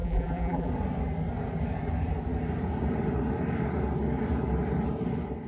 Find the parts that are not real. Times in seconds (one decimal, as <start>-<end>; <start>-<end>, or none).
0.0-0.7